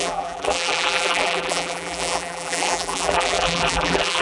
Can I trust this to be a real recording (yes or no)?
no